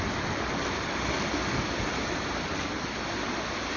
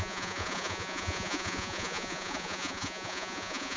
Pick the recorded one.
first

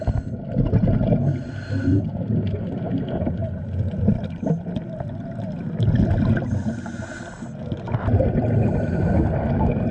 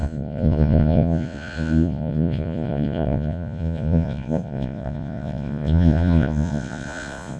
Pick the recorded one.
first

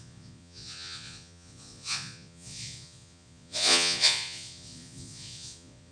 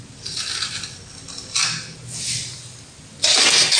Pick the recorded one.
second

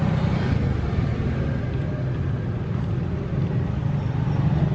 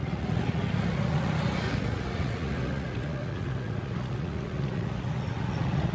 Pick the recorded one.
first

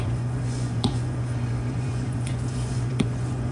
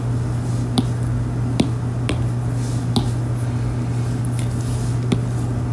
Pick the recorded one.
second